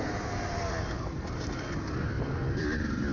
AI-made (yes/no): no